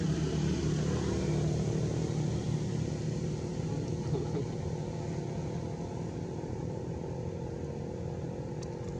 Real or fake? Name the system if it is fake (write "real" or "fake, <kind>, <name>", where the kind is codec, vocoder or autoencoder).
real